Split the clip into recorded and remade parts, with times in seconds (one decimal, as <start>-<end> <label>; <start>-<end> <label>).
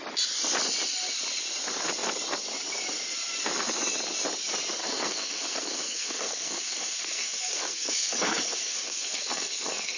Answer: 0.0-4.8 recorded; 4.8-10.0 remade